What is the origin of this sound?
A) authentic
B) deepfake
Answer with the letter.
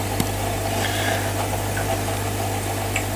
A